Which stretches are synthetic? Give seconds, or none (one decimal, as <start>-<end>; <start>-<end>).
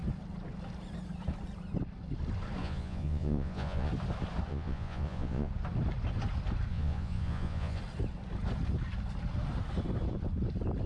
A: 2.6-3.9; 4.5-5.5; 6.7-7.8